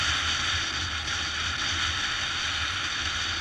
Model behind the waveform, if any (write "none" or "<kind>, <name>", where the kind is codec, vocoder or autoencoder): none